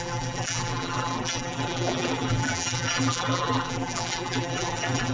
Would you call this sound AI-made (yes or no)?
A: yes